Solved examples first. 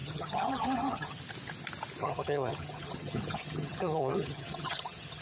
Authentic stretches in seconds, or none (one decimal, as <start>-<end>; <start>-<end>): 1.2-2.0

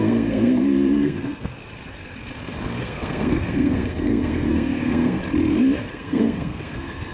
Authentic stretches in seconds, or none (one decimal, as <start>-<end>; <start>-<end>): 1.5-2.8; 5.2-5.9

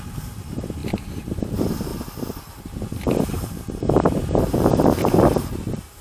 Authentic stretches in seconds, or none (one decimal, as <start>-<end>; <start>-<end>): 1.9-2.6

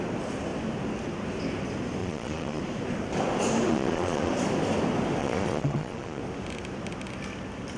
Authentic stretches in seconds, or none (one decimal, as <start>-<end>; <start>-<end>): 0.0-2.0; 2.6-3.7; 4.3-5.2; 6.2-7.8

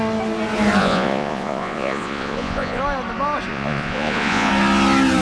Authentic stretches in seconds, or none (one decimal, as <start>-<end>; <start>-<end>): 0.0-0.8; 2.8-3.5; 4.5-5.2